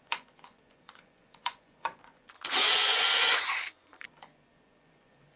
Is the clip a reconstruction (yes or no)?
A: yes